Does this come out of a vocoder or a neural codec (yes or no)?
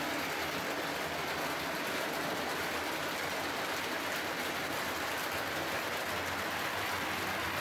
no